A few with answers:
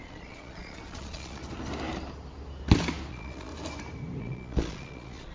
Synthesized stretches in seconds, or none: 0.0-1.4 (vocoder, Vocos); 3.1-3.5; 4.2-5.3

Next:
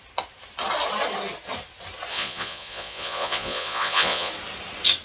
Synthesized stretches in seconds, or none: 2.1-4.3 (vocoder, Vocos)